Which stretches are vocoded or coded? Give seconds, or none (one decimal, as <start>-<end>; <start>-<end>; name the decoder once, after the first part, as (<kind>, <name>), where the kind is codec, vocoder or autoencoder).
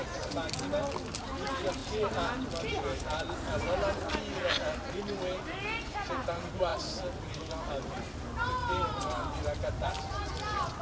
8.6-9.9 (vocoder, BigVGAN v2)